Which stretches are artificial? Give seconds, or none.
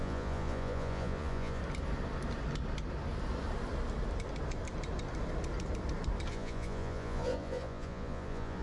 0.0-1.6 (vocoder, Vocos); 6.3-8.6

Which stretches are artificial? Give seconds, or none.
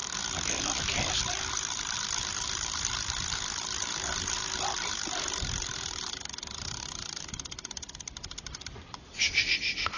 none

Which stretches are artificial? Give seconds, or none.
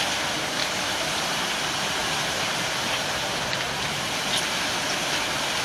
0.6-1.2 (vocoder, BigVGAN v2); 2.0-4.2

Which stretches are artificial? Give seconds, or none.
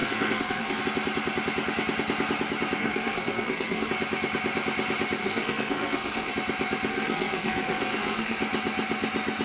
0.0-0.8 (codec, SNAC); 2.8-3.9; 5.2-6.3; 6.9-8.4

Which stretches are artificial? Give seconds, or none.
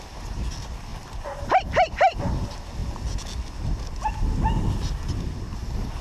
none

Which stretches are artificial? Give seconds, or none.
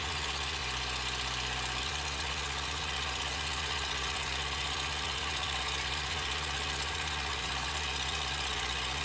0.0-0.6 (vocoder, Vocos); 1.8-9.0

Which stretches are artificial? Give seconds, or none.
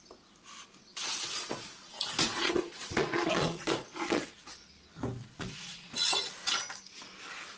1.1-4.7 (vocoder, Vocos); 5.2-6.6